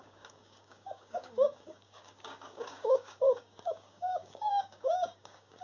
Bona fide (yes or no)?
no